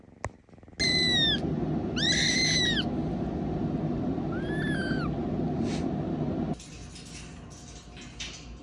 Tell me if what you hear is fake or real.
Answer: real